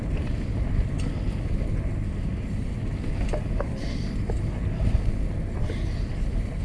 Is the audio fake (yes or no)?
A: no